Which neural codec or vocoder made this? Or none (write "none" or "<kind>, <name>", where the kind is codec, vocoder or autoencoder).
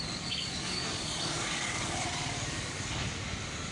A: codec, DAC